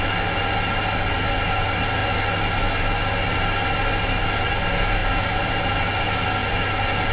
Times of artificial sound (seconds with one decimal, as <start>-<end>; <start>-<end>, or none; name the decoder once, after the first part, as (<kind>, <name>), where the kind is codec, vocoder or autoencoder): none